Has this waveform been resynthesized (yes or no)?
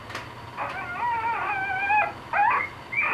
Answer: no